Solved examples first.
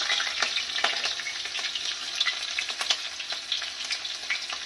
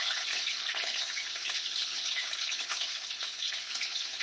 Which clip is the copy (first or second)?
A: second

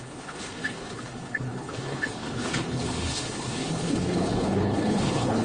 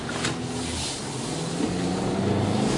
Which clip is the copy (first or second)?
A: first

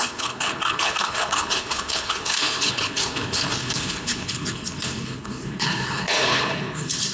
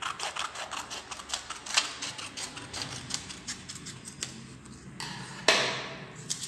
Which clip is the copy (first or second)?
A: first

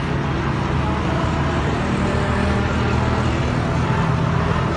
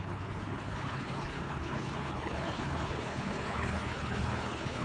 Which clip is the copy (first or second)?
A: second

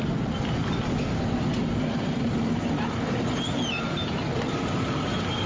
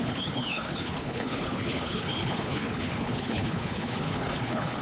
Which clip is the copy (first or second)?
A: second